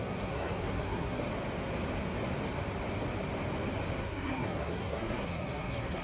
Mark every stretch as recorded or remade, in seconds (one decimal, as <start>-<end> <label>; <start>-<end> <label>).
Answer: 0.0-1.2 remade; 1.2-4.0 recorded; 4.0-6.0 remade